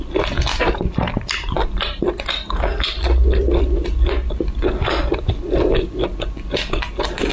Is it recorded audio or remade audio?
recorded